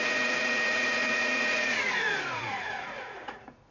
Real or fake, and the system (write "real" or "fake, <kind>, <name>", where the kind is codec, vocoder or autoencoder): fake, vocoder, Vocos